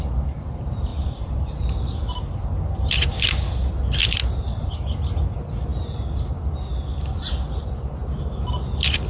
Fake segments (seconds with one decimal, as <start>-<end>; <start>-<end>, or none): 0.9-2.7; 4.0-4.7; 6.7-8.0